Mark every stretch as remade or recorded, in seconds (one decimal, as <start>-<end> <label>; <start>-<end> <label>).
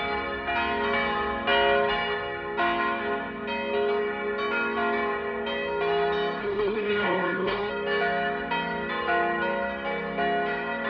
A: 0.0-6.4 recorded; 6.4-7.7 remade; 7.7-10.9 recorded